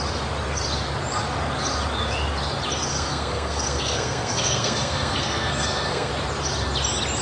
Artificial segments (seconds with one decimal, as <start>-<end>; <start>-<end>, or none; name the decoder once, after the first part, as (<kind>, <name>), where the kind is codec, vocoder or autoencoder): 2.9-6.1 (codec, SNAC)